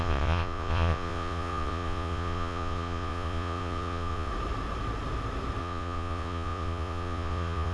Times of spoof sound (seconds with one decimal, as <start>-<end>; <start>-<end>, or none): 0.0-4.3; 5.6-7.7